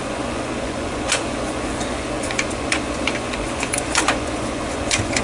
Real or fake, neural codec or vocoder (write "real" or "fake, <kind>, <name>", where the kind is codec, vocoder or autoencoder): fake, vocoder, Vocos